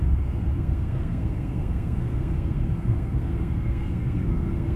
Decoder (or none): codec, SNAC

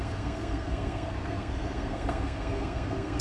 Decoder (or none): codec, SNAC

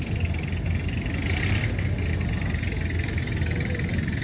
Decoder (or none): none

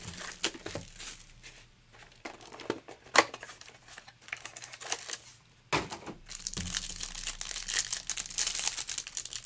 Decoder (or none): none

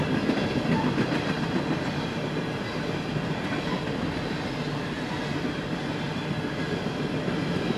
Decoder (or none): none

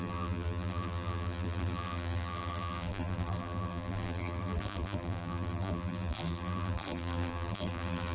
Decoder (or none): vocoder, BigVGAN v2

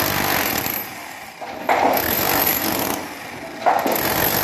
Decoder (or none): none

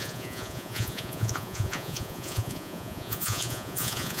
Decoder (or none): vocoder, Vocos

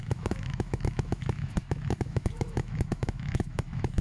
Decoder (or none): autoencoder, DAC-VAE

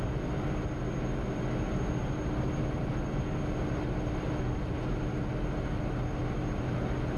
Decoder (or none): none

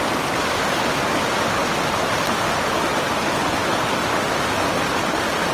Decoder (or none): none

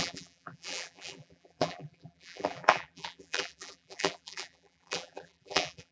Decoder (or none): vocoder, BigVGAN v2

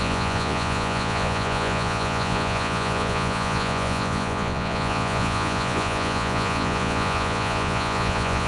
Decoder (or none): vocoder, Vocos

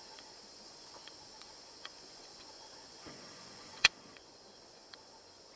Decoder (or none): vocoder, Vocos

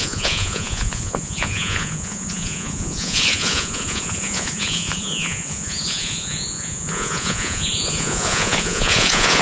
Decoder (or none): vocoder, Vocos